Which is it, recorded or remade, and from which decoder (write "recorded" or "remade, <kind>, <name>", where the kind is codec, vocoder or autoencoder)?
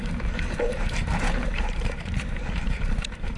remade, vocoder, BigVGAN v2